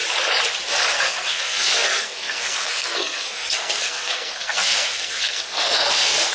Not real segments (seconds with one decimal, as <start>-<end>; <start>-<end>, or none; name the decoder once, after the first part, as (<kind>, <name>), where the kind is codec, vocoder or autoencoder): 0.9-6.3 (codec, SNAC)